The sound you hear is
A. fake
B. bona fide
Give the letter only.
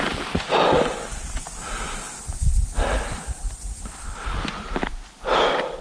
B